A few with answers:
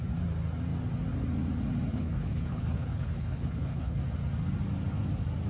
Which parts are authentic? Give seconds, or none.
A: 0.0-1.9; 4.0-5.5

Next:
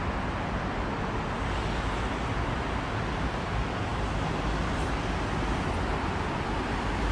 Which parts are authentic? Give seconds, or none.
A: 0.0-7.1

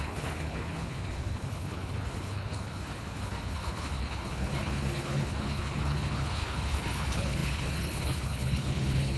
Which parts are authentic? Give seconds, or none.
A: none